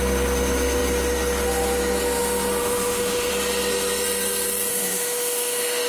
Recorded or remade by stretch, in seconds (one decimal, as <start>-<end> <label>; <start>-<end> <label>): 0.0-2.6 recorded; 2.6-3.3 remade; 3.3-4.7 recorded; 4.7-5.9 remade